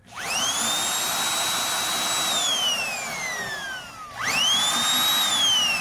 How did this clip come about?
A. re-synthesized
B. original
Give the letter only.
B